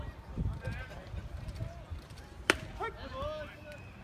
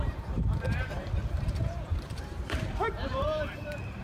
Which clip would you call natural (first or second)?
first